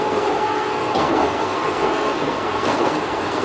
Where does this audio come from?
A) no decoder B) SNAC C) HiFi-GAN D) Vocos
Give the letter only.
B